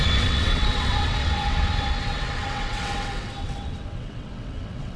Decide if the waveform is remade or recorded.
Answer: remade